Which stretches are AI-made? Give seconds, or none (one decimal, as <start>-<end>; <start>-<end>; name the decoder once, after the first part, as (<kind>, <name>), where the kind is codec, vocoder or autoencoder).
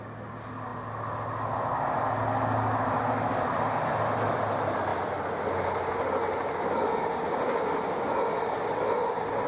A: none